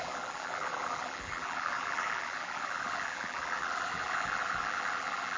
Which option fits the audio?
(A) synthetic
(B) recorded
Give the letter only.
A